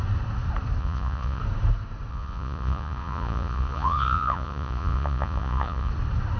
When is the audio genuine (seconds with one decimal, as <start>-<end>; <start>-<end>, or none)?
0.0-0.8; 1.4-2.1; 5.9-6.4